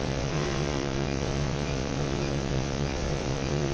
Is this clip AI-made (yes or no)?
yes